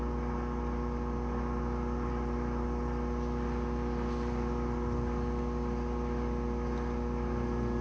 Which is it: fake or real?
real